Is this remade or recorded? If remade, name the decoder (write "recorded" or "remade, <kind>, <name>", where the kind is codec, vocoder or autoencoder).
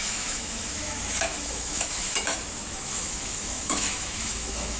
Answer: remade, autoencoder, DAC-VAE